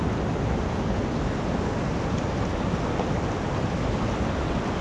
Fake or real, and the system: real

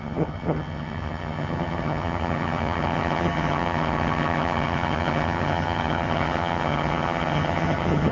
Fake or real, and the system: fake, vocoder, HiFi-GAN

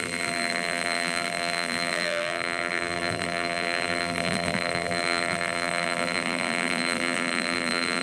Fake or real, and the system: fake, vocoder, BigVGAN v2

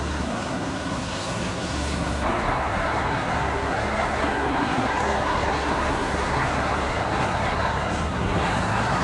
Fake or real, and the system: fake, codec, SNAC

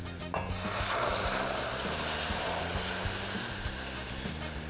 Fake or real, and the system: real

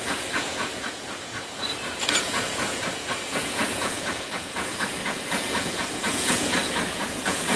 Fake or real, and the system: fake, vocoder, Vocos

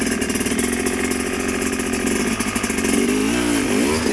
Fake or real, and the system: real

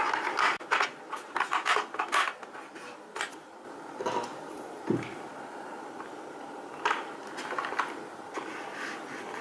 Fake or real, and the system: real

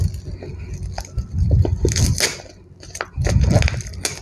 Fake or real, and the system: real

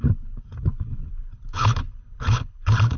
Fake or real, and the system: fake, codec, HILCodec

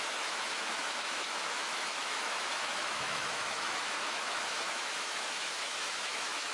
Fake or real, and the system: fake, autoencoder, DAC-VAE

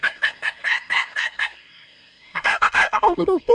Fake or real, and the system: fake, codec, SNAC